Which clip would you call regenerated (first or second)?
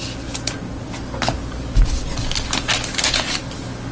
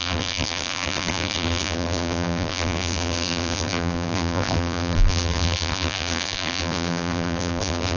second